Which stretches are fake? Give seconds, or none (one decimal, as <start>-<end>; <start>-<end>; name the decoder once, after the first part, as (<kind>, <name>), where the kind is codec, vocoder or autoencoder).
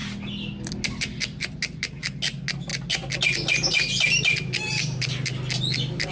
none